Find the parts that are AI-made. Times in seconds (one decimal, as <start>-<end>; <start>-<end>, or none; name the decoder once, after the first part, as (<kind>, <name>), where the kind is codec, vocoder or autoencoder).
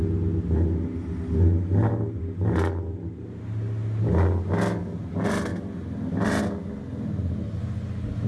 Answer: none